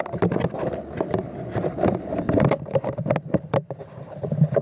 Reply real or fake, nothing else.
real